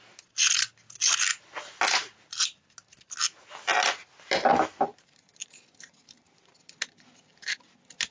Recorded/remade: recorded